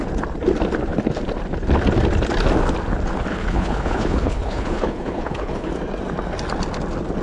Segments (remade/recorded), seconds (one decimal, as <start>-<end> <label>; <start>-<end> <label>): 0.0-3.3 recorded; 3.3-5.7 remade; 5.7-7.2 recorded